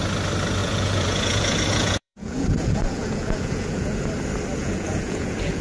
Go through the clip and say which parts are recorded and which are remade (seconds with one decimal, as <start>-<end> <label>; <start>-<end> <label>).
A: 0.0-0.6 recorded; 0.6-4.0 remade; 4.0-4.6 recorded; 4.6-5.6 remade